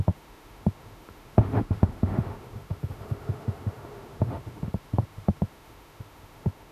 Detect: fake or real fake